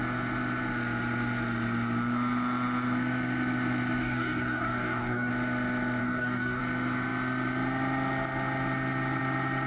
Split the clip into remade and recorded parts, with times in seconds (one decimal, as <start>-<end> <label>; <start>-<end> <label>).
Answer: 0.0-4.0 recorded; 4.0-5.3 remade; 5.3-6.0 recorded; 6.0-6.6 remade; 6.6-9.7 recorded